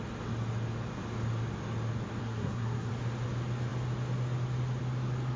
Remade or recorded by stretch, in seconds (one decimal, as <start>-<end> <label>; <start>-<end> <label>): 0.0-2.2 recorded; 2.2-2.9 remade; 2.9-5.4 recorded